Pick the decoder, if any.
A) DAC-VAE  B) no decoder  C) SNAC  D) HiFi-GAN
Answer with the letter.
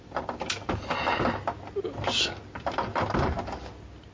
B